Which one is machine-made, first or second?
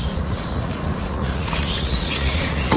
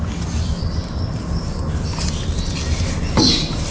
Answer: first